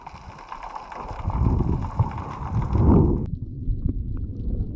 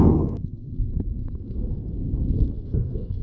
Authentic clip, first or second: first